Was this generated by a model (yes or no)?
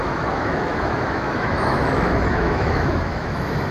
yes